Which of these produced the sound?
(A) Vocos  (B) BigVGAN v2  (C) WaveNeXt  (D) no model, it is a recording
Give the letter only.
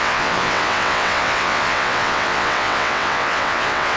C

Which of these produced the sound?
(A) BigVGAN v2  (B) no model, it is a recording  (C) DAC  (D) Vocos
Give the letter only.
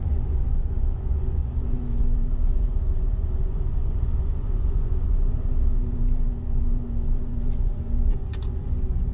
D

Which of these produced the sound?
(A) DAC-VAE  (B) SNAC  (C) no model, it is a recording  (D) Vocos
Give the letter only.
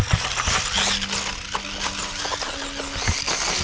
C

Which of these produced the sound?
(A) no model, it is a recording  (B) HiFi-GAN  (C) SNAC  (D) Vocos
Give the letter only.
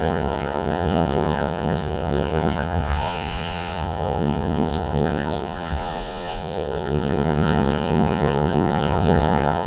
D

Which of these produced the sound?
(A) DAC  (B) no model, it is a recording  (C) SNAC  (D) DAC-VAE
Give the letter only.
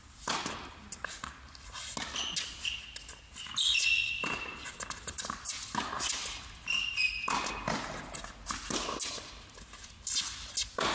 B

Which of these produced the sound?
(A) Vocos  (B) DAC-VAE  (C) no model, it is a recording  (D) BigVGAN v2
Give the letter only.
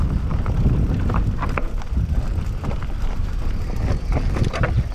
C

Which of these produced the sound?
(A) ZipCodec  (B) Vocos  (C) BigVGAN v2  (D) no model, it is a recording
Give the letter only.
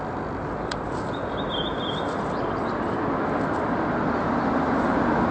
D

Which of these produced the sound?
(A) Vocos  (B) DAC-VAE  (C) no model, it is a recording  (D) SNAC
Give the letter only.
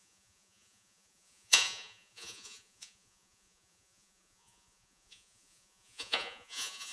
A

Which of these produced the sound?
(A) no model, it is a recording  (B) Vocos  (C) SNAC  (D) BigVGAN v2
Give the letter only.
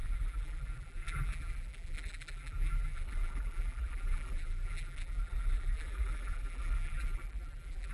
D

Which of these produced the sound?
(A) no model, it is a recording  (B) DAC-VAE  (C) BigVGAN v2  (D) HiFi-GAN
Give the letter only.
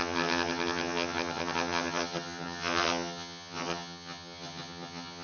D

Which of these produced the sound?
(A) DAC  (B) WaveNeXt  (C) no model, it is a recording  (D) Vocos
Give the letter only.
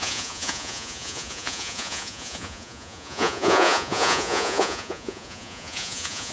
D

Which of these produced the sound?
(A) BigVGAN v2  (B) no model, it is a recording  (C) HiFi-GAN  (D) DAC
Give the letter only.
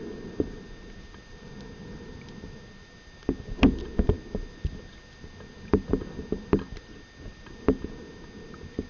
B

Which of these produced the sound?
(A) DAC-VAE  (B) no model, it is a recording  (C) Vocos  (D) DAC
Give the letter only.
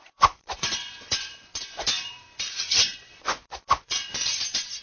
C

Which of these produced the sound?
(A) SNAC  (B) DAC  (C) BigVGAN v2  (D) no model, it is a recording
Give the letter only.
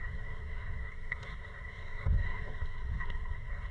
A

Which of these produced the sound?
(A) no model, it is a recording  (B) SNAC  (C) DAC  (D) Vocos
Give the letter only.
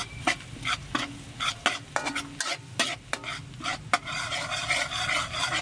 A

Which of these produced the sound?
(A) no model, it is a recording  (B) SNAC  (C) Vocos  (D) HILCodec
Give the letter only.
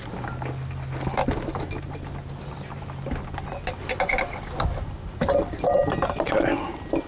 A